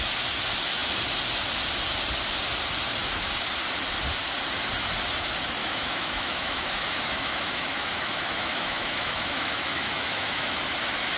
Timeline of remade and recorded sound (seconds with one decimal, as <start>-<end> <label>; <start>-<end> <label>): 0.0-5.6 recorded; 5.6-10.5 remade; 10.5-11.2 recorded